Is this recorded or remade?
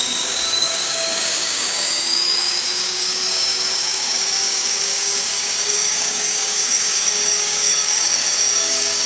remade